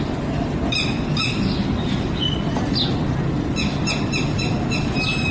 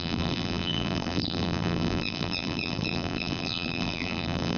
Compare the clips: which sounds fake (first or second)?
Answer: second